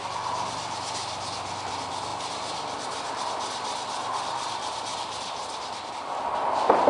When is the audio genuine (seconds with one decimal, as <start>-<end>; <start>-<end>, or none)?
0.0-6.9

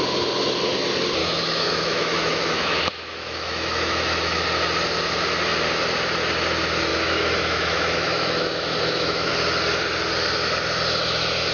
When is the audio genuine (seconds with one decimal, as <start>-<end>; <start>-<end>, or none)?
0.0-1.2; 4.4-6.9; 9.3-11.5